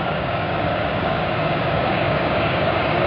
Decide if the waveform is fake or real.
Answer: fake